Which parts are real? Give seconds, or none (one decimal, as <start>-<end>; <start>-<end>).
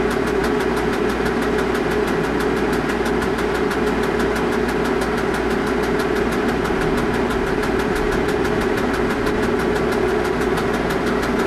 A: 0.0-11.5